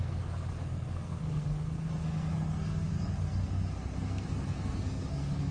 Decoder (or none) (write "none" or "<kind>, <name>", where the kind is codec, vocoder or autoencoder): codec, SNAC